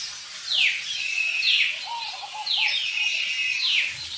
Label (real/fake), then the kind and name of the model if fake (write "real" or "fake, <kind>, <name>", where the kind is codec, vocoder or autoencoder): real